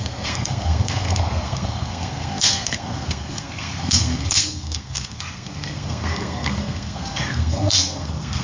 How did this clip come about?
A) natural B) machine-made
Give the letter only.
B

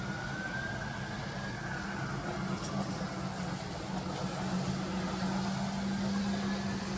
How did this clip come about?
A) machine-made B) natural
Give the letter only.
B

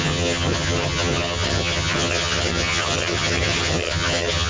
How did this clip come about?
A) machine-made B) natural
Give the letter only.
A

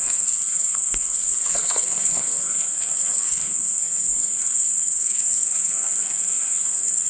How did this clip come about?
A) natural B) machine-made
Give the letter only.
B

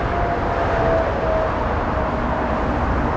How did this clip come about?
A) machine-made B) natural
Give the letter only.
B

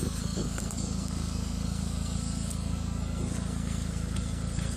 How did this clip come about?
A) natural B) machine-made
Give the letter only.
B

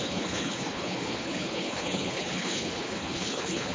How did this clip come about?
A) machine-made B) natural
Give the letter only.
A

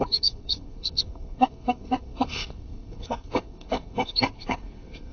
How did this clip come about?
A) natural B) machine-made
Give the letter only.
B